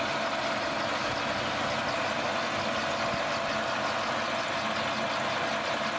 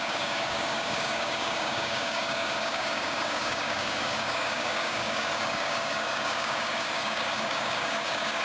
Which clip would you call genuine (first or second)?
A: first